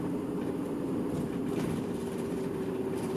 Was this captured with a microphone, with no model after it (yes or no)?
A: no